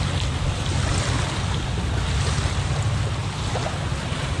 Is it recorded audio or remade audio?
recorded